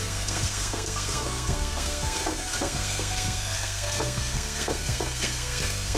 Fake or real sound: fake